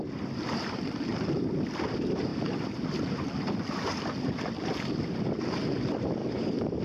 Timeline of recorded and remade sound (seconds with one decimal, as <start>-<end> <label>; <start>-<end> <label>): 0.0-6.2 recorded; 6.2-6.8 remade